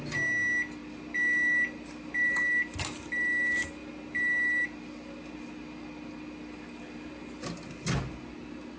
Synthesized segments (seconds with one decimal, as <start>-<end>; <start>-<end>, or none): none